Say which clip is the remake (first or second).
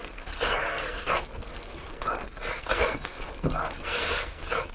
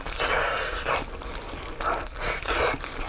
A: first